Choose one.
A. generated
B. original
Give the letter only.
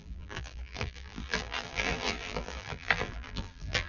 A